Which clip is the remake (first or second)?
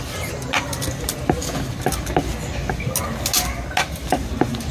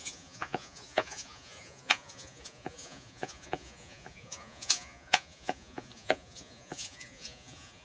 second